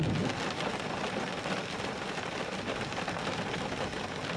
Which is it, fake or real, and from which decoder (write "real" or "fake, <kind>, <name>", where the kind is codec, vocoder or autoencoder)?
real